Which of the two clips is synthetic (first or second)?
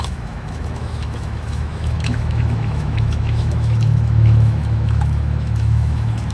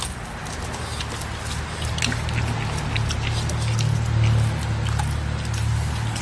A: first